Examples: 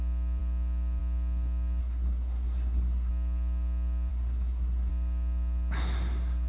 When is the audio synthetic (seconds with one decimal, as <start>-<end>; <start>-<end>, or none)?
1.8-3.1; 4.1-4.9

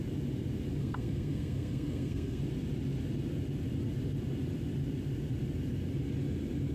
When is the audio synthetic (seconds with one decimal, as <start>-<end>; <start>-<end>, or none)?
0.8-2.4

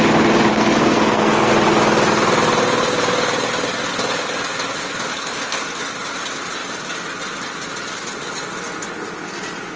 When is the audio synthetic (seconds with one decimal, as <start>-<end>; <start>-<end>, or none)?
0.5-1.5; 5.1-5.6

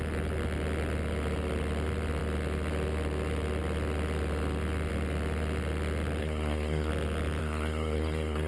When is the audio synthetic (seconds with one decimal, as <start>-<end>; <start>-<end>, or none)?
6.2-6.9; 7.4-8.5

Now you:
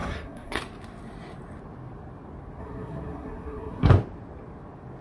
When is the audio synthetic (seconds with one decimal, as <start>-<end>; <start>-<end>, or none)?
0.0-0.6; 2.6-3.9

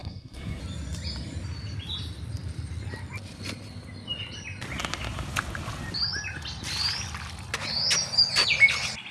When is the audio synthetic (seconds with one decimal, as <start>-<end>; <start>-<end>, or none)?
0.0-0.6

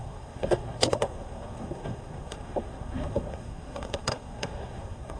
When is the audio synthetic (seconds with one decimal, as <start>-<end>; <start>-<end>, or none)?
0.0-5.2

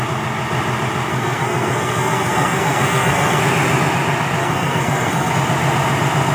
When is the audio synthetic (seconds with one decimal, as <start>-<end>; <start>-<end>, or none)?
1.1-3.4; 4.4-5.3